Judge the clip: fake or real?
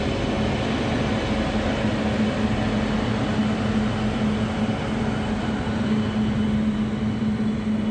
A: real